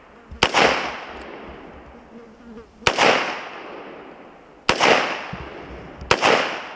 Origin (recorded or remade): recorded